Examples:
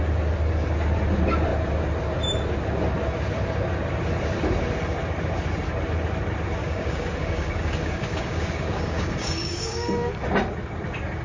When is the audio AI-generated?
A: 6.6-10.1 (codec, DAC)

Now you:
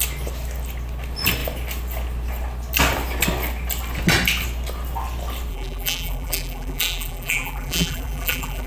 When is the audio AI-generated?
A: 5.5-8.7 (vocoder, BigVGAN v2)

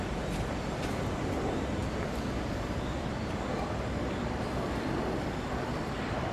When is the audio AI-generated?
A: 0.0-6.3 (vocoder, BigVGAN v2)

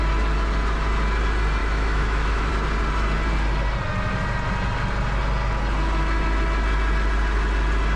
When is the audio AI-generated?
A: 1.6-2.5 (autoencoder, DAC-VAE)